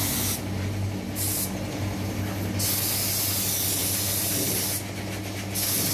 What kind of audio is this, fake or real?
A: real